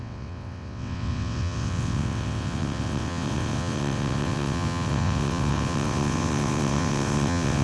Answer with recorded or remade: remade